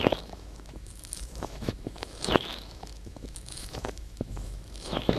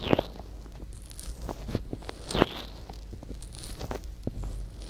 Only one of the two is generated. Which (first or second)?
first